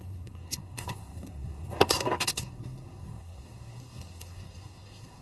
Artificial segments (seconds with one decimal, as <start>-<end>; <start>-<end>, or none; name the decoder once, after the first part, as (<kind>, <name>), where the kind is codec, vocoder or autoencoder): 0.0-5.2 (codec, SNAC)